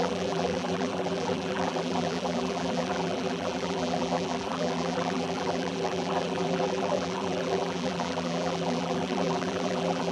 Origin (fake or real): fake